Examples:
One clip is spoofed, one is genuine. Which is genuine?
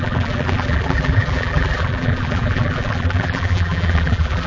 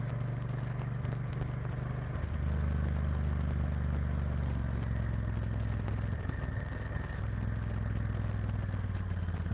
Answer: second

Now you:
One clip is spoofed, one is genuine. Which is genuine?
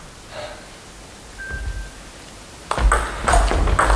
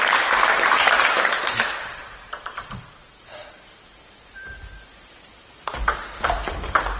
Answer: first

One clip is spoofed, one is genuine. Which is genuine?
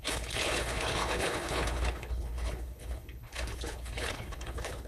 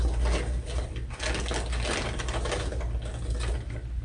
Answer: second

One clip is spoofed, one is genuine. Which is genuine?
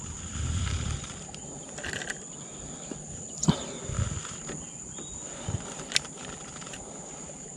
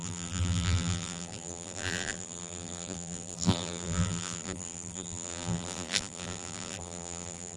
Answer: first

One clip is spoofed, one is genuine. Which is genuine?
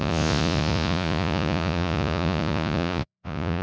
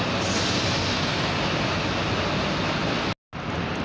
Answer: second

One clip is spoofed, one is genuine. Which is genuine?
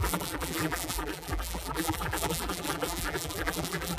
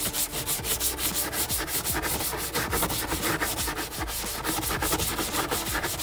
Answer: second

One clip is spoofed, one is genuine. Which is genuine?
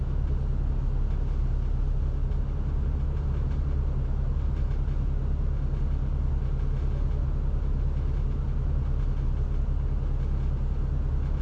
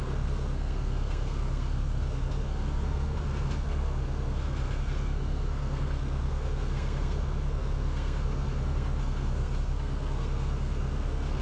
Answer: first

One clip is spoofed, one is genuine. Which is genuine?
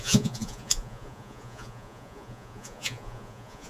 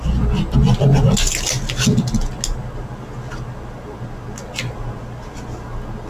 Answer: second